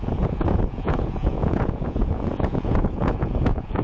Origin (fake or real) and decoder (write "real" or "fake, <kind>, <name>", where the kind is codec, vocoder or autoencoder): fake, vocoder, Vocos